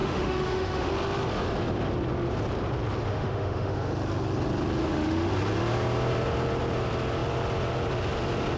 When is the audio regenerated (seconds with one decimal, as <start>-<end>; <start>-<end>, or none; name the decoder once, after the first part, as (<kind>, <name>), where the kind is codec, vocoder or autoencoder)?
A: 0.0-0.9 (autoencoder, DAC-VAE); 3.1-3.9; 4.8-5.3